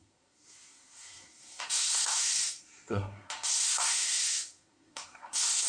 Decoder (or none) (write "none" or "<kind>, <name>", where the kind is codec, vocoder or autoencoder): codec, SNAC